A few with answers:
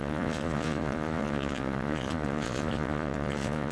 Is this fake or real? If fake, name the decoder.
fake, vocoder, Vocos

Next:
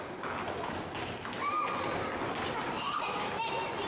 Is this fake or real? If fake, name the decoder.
real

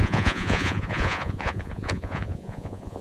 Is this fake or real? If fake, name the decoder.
fake, vocoder, Vocos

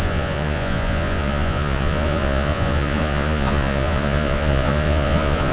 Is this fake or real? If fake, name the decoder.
fake, vocoder, Vocos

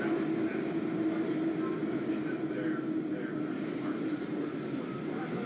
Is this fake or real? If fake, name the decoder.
real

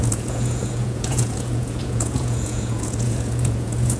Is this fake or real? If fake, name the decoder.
fake, vocoder, Vocos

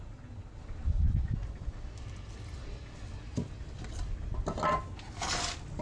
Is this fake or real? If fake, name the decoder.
real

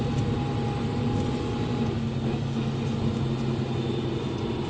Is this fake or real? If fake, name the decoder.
real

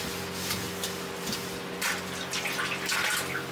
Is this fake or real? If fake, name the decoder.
real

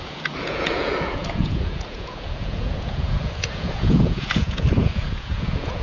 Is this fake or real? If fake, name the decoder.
fake, vocoder, Vocos